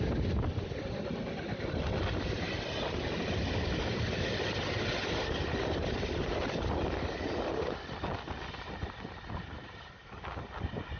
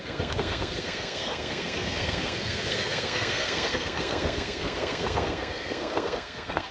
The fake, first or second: second